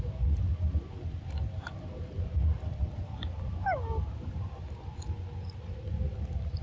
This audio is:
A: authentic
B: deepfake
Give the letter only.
A